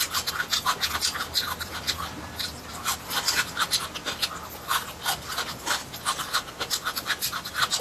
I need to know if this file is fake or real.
real